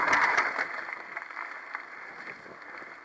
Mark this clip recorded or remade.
recorded